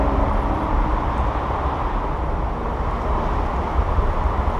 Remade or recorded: recorded